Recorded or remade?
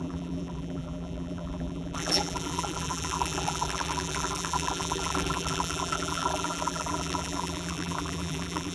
remade